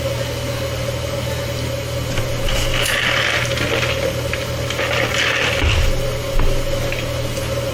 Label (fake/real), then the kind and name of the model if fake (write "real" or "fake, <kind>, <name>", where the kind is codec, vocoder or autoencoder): real